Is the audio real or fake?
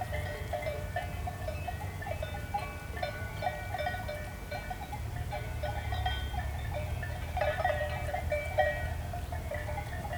fake